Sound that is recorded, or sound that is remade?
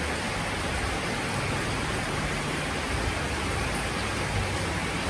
recorded